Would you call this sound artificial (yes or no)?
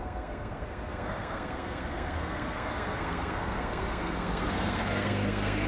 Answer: yes